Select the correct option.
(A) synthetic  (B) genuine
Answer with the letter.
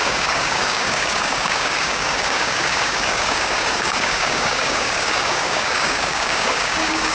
A